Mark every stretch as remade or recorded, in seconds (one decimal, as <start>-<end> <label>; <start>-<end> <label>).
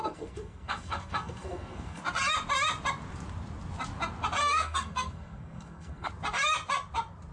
0.0-2.0 remade; 2.0-4.4 recorded; 4.4-6.1 remade; 6.1-7.3 recorded